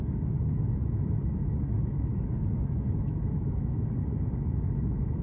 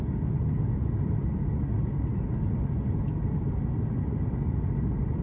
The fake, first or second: first